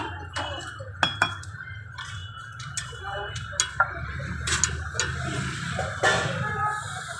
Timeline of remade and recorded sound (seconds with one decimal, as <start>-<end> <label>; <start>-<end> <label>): 0.0-7.2 recorded